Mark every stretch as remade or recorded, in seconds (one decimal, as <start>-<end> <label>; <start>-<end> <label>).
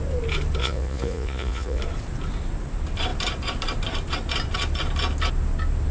0.0-0.6 recorded; 0.6-1.8 remade; 1.8-5.9 recorded